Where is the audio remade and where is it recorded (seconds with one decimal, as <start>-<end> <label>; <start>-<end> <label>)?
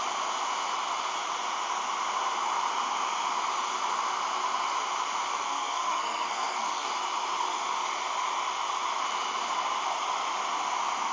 0.0-5.3 recorded; 5.3-6.9 remade; 6.9-11.1 recorded